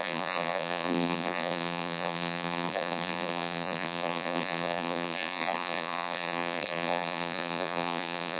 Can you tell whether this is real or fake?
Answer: fake